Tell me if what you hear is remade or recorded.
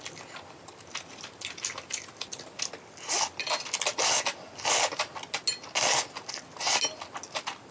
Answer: recorded